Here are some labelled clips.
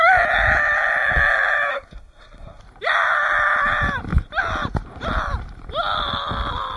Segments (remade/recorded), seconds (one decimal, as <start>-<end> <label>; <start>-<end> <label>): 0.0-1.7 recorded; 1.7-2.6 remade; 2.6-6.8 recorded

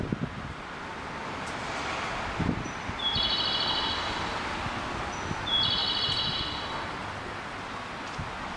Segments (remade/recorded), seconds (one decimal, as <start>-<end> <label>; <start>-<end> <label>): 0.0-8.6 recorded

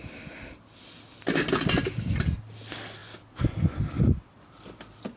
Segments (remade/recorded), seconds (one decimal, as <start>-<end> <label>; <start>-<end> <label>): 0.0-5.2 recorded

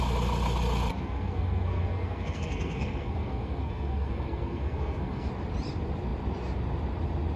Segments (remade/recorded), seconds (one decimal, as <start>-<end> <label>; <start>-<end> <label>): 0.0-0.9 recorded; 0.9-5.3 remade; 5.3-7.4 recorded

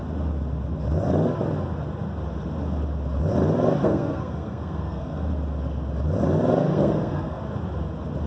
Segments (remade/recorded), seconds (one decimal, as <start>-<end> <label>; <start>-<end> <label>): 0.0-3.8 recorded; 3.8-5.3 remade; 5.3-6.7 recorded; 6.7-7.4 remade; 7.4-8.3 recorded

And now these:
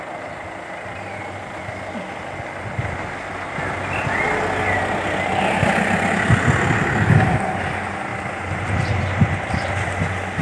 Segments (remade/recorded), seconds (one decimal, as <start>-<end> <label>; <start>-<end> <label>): 0.0-10.4 recorded